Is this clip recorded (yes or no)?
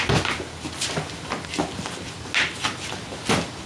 yes